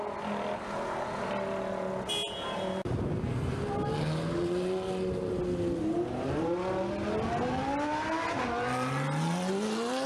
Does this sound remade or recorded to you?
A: recorded